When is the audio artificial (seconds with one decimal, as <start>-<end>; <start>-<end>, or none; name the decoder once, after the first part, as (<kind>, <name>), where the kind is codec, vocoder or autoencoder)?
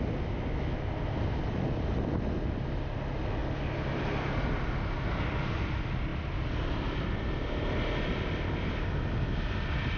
6.1-7.6 (vocoder, BigVGAN v2)